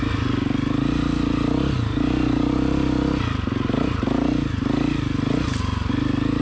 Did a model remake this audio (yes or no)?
no